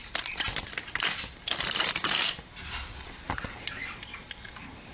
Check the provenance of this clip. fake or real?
real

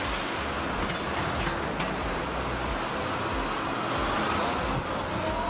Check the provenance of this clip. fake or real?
real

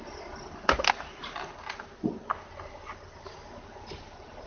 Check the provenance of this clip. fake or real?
real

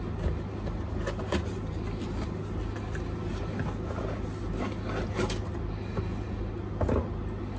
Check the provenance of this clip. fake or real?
real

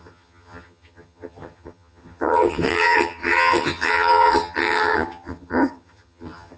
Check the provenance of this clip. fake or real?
fake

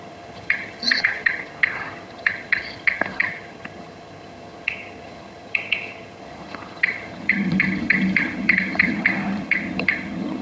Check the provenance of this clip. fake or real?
fake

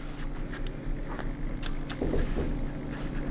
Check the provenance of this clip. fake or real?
real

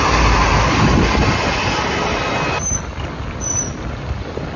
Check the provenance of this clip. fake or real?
real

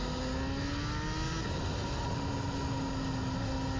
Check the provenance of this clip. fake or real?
real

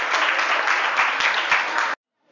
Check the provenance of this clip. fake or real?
real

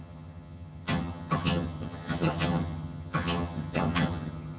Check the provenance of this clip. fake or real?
fake